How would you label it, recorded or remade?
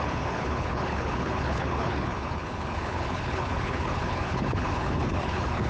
remade